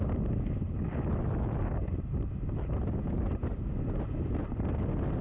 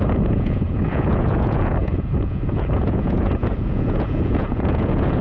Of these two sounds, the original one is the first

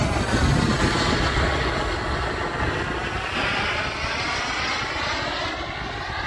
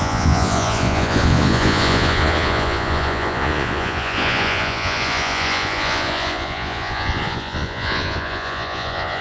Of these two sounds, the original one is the first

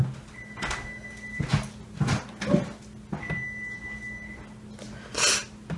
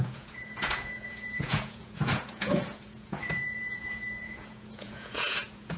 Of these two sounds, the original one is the first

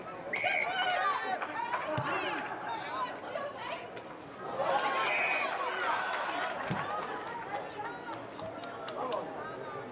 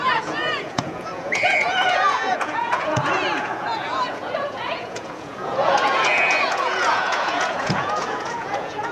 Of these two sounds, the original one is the first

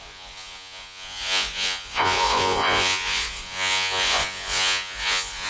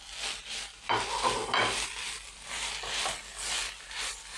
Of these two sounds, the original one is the second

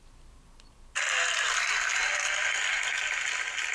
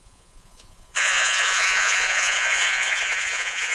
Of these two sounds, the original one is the first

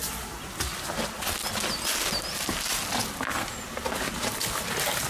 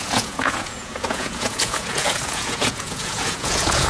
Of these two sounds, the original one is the first